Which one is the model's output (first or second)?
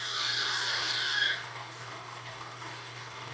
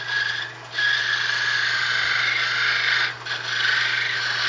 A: first